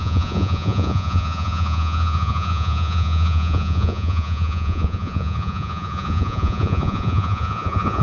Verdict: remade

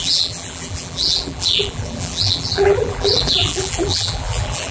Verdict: remade